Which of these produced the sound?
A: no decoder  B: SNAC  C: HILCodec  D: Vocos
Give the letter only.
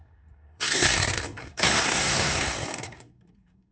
B